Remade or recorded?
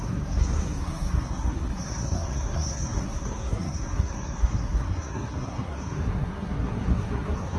remade